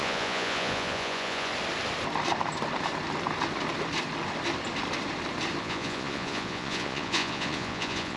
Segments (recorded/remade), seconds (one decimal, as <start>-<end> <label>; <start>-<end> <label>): 0.0-1.5 remade; 1.5-5.6 recorded; 5.6-8.2 remade